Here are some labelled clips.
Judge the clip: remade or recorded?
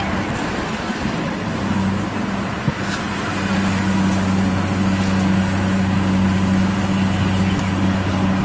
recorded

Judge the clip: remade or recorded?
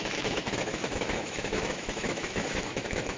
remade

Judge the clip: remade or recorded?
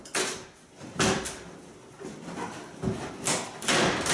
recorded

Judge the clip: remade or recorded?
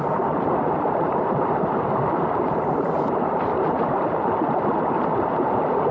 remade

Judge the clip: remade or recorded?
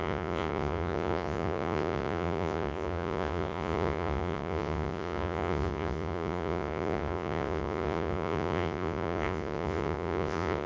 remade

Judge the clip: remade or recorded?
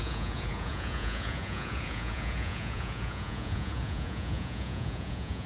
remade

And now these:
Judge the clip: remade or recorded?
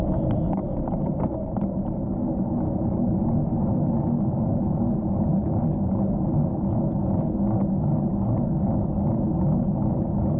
recorded